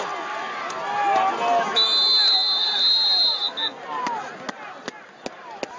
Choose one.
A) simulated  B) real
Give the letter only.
B